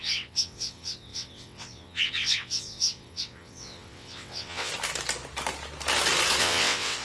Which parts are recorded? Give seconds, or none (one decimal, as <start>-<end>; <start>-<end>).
4.7-6.4